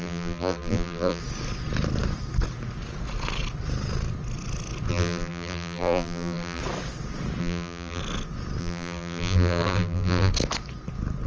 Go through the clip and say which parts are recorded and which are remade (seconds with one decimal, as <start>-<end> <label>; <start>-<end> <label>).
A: 0.0-1.2 remade; 1.2-4.9 recorded; 4.9-6.6 remade; 6.6-7.4 recorded; 7.4-8.0 remade; 8.0-8.6 recorded; 8.6-10.3 remade; 10.3-11.3 recorded